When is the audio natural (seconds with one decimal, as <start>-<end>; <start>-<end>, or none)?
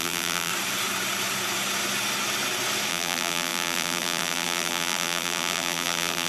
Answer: 0.5-2.9